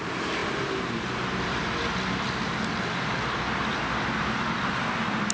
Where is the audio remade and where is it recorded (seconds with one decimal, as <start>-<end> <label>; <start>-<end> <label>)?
0.0-5.3 recorded